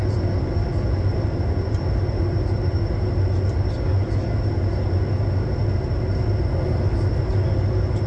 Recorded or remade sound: recorded